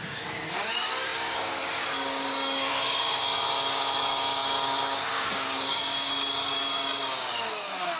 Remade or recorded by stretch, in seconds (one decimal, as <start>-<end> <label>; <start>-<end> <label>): 0.0-8.0 remade